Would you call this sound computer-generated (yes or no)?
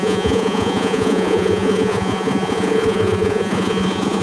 yes